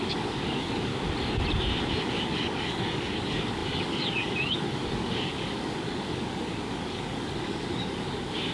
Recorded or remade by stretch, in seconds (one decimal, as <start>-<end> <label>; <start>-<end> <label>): 0.0-0.9 remade; 0.9-2.0 recorded; 2.0-8.5 remade